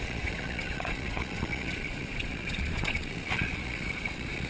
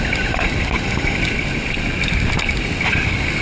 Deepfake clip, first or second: first